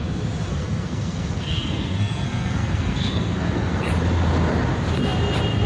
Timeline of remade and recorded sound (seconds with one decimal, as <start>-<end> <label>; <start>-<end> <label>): 0.0-0.5 recorded; 0.5-3.9 remade; 3.9-5.7 recorded